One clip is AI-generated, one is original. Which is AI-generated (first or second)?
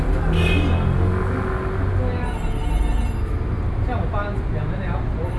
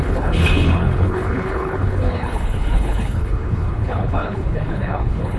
second